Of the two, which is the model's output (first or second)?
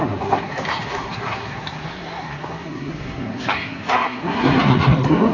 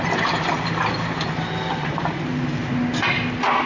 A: first